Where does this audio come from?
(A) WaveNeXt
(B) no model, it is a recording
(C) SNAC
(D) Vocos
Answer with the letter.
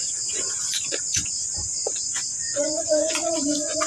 D